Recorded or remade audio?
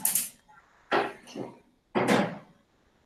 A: recorded